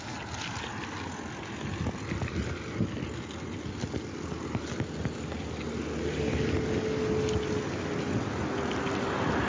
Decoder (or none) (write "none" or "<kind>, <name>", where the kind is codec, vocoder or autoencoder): none